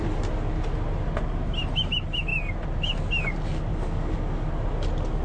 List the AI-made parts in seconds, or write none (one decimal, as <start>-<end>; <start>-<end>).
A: 3.7-4.5